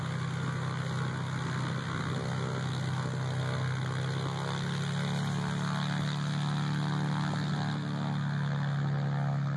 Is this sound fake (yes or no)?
no